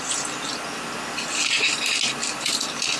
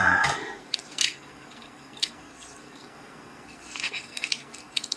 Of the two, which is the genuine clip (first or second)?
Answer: first